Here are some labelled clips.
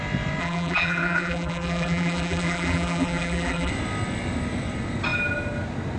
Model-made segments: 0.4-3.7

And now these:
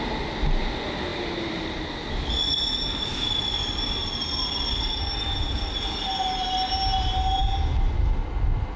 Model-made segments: none

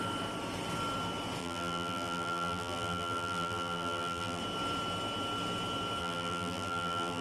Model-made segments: 1.4-4.4; 6.0-7.2

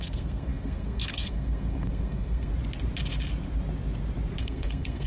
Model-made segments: 0.0-2.5; 4.4-5.1

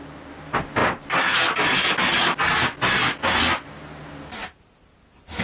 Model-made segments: none

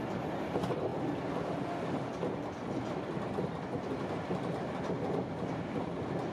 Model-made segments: none

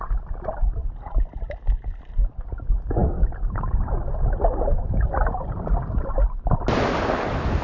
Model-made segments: none